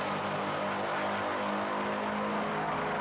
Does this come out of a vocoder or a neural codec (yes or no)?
no